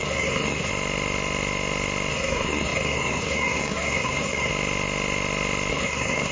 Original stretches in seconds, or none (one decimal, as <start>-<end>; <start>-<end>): 0.7-2.1; 4.5-5.7